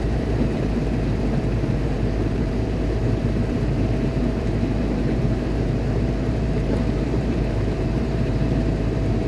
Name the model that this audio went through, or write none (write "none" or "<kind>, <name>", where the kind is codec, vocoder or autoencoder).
vocoder, BigVGAN v2